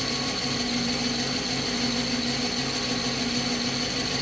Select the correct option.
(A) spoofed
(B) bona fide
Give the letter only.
B